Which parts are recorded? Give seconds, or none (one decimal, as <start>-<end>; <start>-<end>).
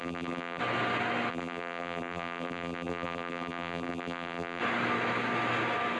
0.6-1.3; 4.6-6.0